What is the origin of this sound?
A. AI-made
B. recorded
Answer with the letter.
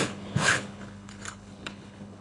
A